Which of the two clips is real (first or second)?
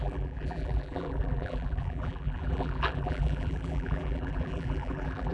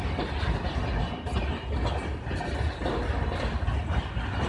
second